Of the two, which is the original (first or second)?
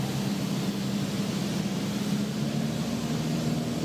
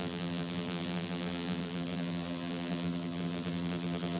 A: first